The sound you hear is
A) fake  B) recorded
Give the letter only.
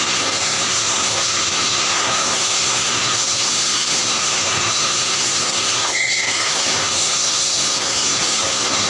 A